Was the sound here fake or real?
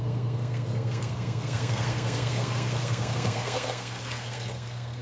fake